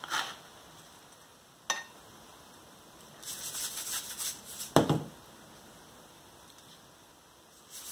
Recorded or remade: recorded